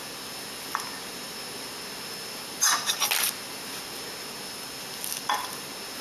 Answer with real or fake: real